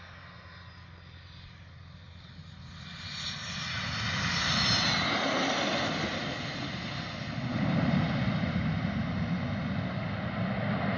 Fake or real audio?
real